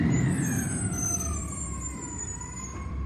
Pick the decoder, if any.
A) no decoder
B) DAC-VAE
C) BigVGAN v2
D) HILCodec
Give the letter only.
C